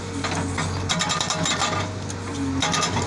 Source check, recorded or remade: recorded